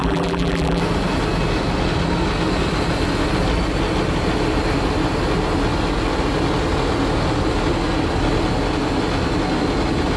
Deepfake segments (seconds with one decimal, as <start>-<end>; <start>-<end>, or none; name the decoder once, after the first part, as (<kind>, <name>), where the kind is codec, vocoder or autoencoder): 0.0-0.8 (vocoder, BigVGAN v2)